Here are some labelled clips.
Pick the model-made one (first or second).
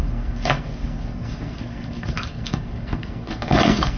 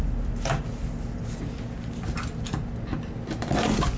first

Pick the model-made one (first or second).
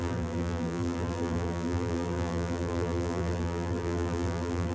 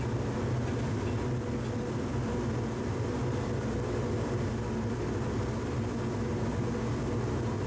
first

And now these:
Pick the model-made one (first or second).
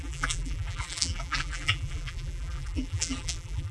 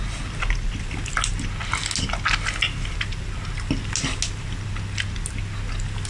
first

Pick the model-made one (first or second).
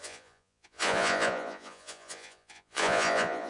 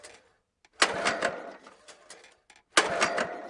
first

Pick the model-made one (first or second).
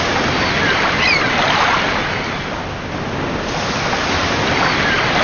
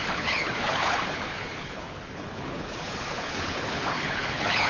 second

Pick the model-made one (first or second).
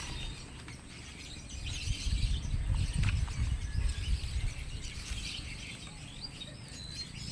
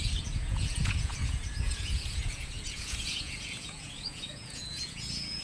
second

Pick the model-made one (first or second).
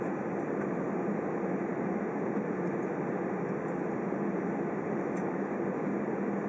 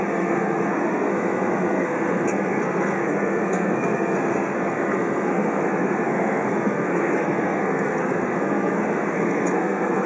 second